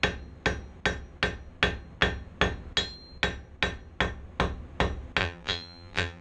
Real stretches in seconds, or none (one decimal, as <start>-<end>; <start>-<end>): 0.0-5.2